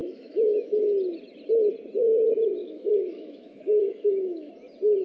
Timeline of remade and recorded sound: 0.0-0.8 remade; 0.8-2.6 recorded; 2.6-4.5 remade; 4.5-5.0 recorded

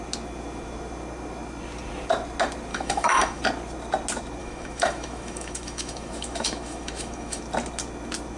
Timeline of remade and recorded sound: 0.0-2.7 recorded; 2.7-3.4 remade; 3.4-4.4 recorded; 4.4-7.4 remade; 7.4-8.4 recorded

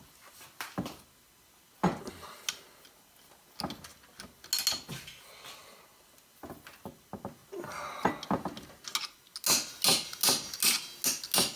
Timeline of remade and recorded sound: 0.0-11.6 recorded

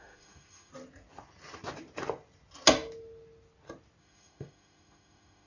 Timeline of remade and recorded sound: 0.0-0.7 remade; 0.7-4.0 recorded; 4.0-5.5 remade